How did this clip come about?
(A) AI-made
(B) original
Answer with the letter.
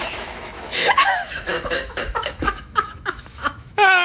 A